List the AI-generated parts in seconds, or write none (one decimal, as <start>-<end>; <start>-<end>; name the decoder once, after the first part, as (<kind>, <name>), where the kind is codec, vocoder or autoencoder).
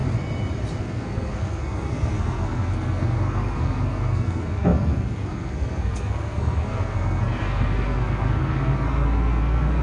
0.8-9.8 (codec, SNAC)